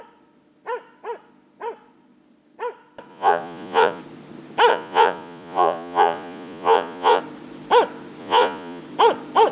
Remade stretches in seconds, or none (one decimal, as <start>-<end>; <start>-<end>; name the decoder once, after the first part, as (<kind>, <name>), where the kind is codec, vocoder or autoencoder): 3.1-4.0 (vocoder, Vocos); 4.7-7.2; 8.2-8.8